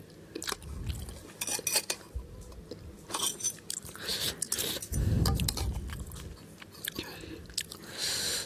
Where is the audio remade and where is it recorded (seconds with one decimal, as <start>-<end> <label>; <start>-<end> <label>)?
0.0-8.5 recorded